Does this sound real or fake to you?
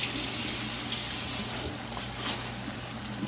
real